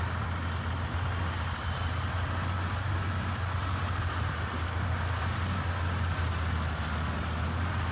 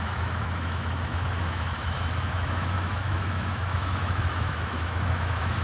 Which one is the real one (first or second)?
first